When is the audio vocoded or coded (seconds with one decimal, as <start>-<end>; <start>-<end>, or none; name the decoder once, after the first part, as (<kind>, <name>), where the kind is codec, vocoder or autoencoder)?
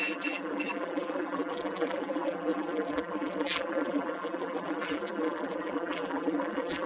0.0-6.9 (vocoder, BigVGAN v2)